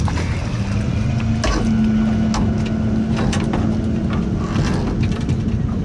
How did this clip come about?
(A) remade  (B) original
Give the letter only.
B